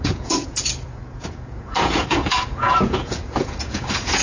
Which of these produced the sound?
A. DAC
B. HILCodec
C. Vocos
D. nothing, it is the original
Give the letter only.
C